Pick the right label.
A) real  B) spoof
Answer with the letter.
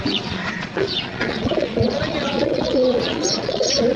B